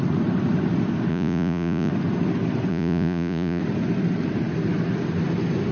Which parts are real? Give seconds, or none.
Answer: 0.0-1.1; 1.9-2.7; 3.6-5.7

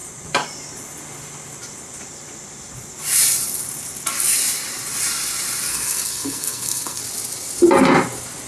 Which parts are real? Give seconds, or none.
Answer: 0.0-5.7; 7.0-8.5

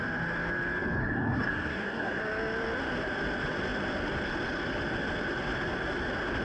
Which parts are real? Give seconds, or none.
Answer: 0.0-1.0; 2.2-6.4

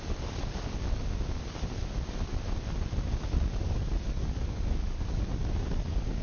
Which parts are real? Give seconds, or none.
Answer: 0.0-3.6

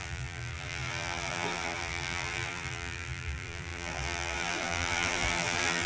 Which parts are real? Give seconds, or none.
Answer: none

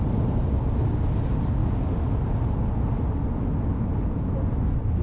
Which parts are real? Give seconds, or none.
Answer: 0.0-5.0